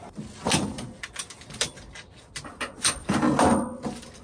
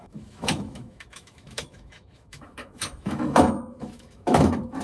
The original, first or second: first